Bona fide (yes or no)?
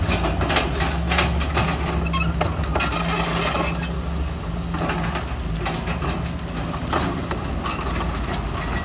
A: yes